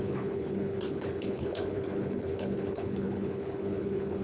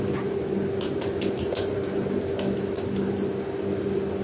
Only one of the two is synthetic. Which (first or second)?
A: first